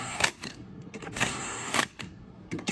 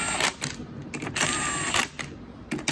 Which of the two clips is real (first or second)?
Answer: second